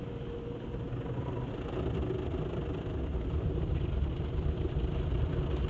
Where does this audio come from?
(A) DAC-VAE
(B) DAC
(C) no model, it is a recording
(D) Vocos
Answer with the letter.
C